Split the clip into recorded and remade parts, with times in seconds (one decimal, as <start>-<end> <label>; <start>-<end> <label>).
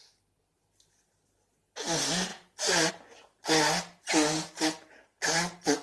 0.0-5.8 recorded